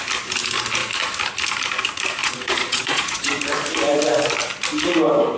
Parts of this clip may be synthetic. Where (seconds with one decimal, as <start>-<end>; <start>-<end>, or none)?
2.2-3.4